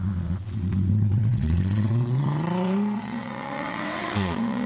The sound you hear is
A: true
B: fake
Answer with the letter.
B